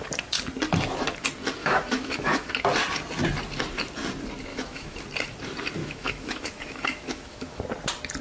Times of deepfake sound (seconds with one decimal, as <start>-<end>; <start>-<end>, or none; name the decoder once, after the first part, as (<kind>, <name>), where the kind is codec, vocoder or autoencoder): 1.6-2.5 (autoencoder, DAC-VAE); 4.5-5.0; 5.8-7.6

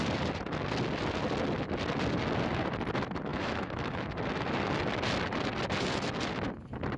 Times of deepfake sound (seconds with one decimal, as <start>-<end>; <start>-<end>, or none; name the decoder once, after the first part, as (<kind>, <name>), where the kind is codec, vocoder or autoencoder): 3.3-4.1 (autoencoder, DAC-VAE)

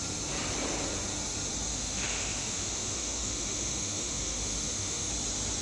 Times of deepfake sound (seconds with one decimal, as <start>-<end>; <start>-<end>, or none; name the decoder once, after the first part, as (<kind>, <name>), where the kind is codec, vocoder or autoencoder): 1.7-5.1 (autoencoder, DAC-VAE)

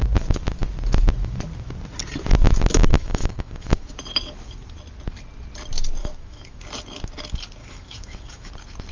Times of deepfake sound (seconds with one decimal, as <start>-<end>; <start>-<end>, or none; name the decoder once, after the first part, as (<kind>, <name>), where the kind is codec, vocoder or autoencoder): 2.8-3.9 (autoencoder, DAC-VAE); 6.0-6.6; 7.6-8.5

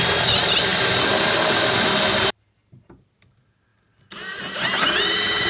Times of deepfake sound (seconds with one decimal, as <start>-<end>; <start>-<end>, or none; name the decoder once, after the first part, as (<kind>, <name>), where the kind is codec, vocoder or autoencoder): none

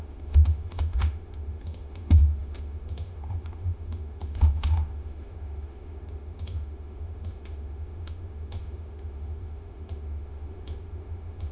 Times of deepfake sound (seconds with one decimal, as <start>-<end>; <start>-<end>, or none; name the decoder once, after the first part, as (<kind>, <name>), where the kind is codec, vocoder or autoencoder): 0.0-11.5 (autoencoder, DAC-VAE)